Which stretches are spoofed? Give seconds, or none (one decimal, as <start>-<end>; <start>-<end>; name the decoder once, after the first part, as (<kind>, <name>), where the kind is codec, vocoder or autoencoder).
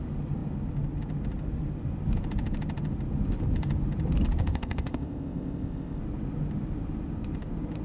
4.4-6.0 (codec, ZipCodec)